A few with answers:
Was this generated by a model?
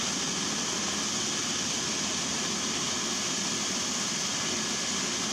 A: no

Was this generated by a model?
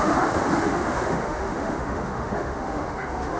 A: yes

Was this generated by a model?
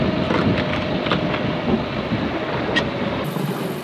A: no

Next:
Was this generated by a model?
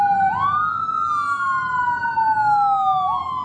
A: no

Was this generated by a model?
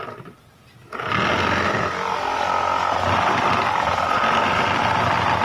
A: no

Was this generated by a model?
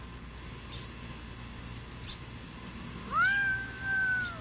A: no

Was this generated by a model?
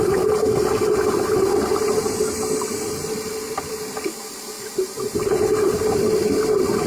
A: no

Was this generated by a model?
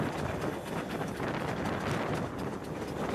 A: no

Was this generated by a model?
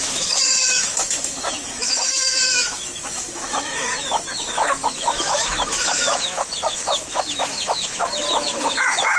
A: yes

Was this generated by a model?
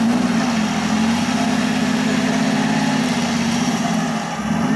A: no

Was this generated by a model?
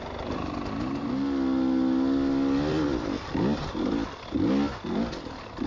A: no